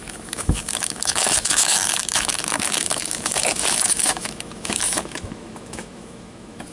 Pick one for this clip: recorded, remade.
remade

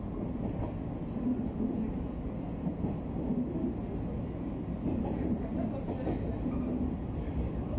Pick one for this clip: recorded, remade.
recorded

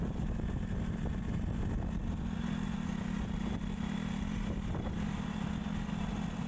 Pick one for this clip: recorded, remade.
recorded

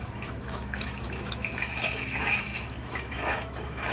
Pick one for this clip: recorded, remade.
remade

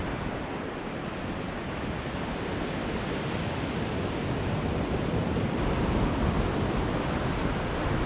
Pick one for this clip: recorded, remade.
recorded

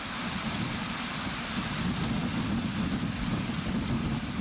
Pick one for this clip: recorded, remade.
recorded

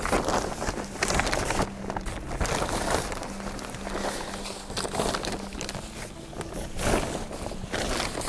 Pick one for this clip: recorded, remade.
recorded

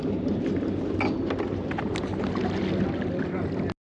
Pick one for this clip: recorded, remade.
recorded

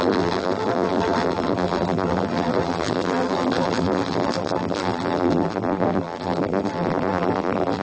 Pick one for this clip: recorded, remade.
remade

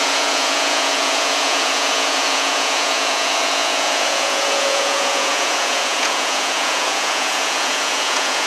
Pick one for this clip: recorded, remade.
remade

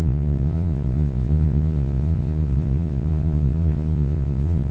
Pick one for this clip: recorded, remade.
remade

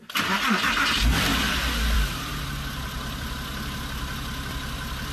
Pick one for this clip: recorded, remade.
recorded